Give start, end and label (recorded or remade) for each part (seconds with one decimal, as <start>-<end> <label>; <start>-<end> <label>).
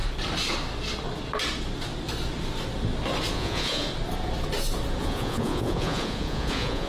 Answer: 0.0-3.3 recorded; 3.3-3.9 remade; 3.9-5.0 recorded; 5.0-6.9 remade